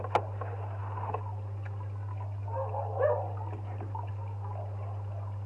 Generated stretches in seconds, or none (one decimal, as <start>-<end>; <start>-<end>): none